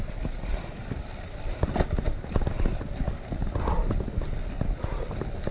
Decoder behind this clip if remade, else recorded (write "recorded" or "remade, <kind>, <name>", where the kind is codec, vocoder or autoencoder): recorded